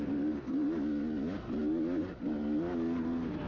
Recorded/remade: recorded